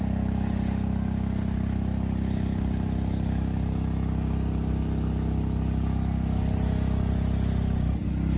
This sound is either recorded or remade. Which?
recorded